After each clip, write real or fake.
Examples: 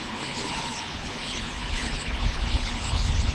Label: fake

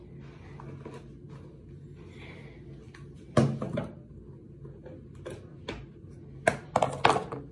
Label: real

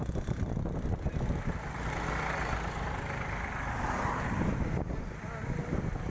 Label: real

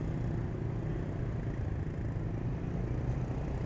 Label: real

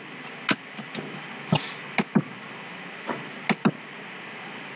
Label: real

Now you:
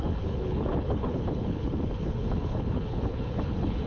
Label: fake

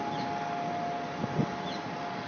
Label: real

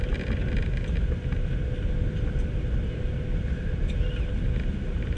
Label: real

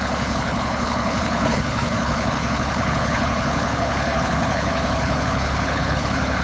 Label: fake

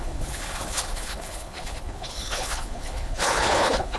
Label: fake